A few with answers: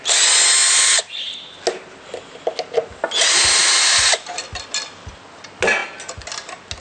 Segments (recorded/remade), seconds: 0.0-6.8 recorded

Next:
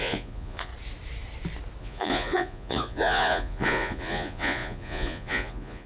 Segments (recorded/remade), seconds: 0.0-0.7 remade; 0.7-1.8 recorded; 1.8-5.9 remade

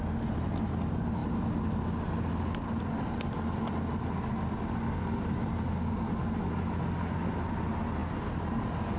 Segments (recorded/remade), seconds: 0.0-1.2 recorded; 1.2-1.8 remade; 1.8-9.0 recorded

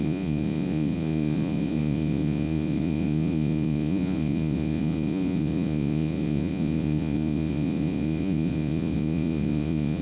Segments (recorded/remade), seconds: 0.0-10.0 remade

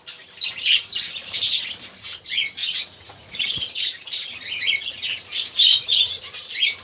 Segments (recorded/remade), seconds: 0.0-2.6 recorded; 2.6-5.2 remade; 5.2-5.7 recorded; 5.7-6.2 remade; 6.2-6.8 recorded